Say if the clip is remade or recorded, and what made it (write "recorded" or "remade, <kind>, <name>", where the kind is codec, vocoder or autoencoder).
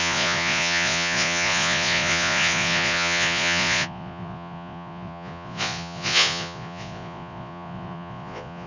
remade, vocoder, Vocos